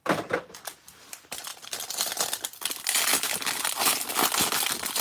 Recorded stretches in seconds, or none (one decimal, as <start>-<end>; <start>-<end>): 0.0-5.0